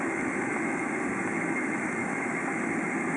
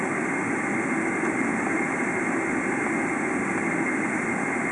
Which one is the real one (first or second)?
second